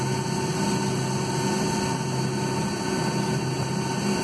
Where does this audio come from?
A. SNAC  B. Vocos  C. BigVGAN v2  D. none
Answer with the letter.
D